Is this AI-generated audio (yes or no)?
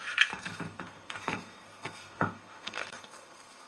yes